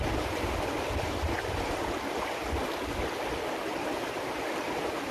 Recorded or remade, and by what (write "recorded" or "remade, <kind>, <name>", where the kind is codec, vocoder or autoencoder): recorded